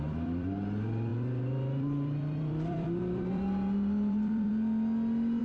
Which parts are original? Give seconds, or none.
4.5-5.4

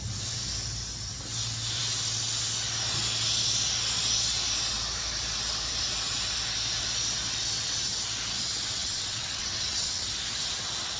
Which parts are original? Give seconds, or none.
0.0-8.8; 10.0-11.0

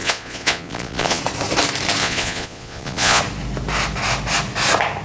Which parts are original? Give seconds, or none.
1.2-2.0; 3.2-5.0

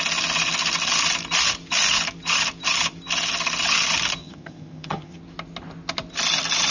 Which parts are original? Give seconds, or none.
0.0-4.2; 5.2-6.7

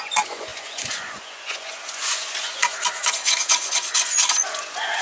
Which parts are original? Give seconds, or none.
none

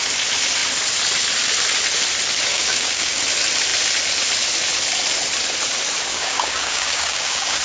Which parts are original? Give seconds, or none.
0.0-2.5; 3.2-6.1